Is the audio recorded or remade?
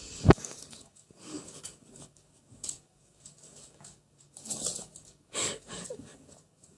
remade